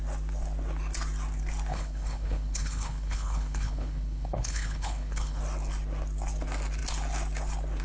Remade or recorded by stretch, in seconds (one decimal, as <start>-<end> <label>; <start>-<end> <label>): 0.0-1.7 recorded; 1.7-5.4 remade; 5.4-7.8 recorded